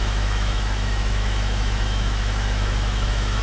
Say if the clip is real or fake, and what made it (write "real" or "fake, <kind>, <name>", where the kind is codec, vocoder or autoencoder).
fake, autoencoder, DAC-VAE